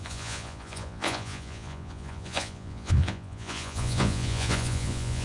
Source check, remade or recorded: remade